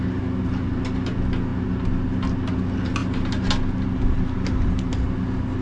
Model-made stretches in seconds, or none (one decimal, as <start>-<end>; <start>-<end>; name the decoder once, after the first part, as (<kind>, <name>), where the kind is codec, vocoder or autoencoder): none